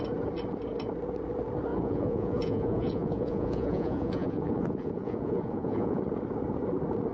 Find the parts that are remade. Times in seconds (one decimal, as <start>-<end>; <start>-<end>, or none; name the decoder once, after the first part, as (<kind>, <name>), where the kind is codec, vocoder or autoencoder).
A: 1.7-6.0 (vocoder, Vocos)